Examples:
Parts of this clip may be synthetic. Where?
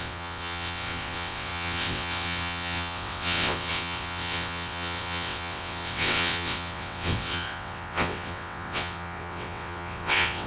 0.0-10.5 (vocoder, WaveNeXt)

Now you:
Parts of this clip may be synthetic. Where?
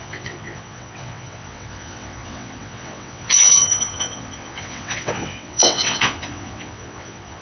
0.0-7.4 (vocoder, WaveNeXt)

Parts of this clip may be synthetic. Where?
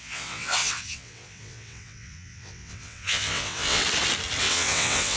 0.0-3.8 (vocoder, WaveNeXt); 4.4-5.2